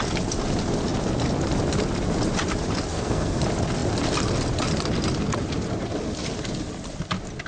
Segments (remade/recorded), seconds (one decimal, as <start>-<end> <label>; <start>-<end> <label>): 0.0-2.9 recorded; 2.9-3.4 remade; 3.4-7.5 recorded